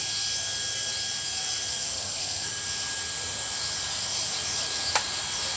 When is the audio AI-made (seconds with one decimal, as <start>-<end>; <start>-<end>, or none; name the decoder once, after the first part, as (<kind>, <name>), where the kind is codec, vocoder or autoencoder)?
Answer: 1.7-2.5 (codec, SNAC)